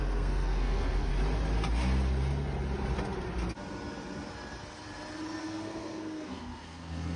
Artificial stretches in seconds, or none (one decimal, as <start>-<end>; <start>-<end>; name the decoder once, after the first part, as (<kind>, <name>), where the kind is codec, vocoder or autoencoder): 0.0-1.1 (codec, SNAC); 5.4-7.2